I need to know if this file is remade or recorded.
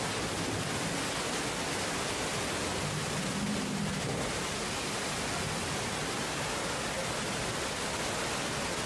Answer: recorded